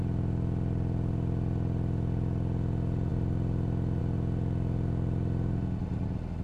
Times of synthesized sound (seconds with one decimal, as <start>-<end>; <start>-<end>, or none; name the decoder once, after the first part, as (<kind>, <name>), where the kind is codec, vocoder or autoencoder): none